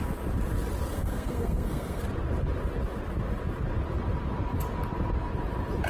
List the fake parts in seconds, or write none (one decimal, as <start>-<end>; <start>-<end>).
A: 0.9-2.0